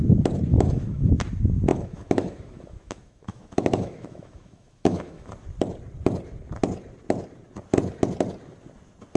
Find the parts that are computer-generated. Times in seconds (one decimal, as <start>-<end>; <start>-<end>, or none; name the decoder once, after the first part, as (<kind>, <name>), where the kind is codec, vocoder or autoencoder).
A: 0.5-1.1 (autoencoder, DAC-VAE); 1.7-5.3